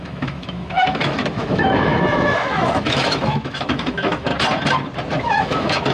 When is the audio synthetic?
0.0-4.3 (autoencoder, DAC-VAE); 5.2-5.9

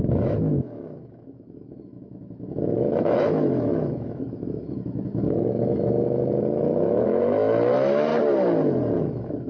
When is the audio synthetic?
0.0-8.1 (autoencoder, DAC-VAE); 9.0-9.5

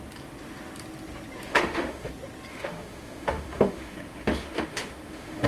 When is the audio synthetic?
1.5-2.1 (autoencoder, DAC-VAE); 2.5-5.5

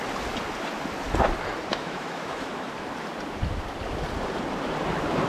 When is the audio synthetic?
1.7-2.7 (autoencoder, DAC-VAE)

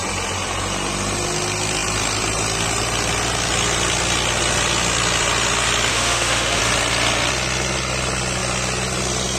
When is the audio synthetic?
5.9-6.6 (autoencoder, DAC-VAE)

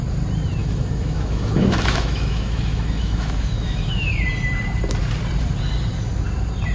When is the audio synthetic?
0.6-4.1 (autoencoder, DAC-VAE)

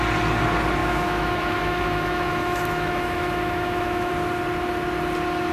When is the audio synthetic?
0.8-4.1 (autoencoder, DAC-VAE)

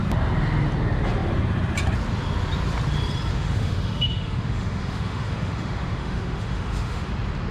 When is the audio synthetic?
3.3-7.1 (autoencoder, DAC-VAE)